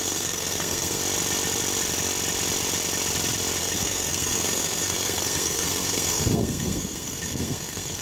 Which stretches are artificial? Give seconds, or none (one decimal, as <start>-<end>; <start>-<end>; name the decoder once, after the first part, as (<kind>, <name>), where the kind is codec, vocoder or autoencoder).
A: 0.0-1.0 (codec, SNAC); 3.6-8.0